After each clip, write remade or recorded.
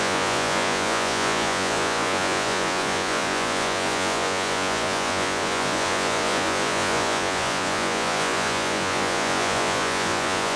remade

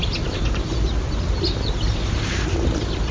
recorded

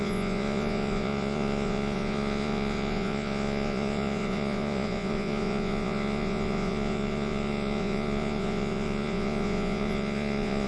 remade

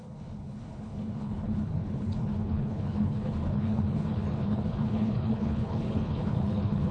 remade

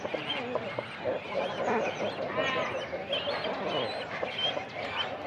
recorded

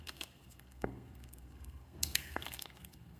remade